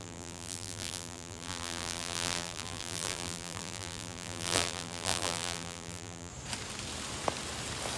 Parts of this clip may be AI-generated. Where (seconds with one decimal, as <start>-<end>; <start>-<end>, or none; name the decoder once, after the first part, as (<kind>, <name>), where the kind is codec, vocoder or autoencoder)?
0.0-6.3 (vocoder, BigVGAN v2)